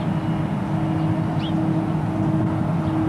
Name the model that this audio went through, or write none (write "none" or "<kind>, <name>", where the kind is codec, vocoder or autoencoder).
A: none